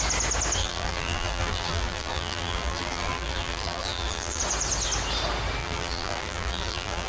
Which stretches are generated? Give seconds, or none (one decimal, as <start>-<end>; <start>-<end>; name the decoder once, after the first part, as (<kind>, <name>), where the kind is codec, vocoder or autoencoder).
0.6-4.4 (vocoder, BigVGAN v2); 5.6-7.1